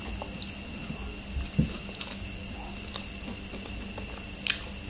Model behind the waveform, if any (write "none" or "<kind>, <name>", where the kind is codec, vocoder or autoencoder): none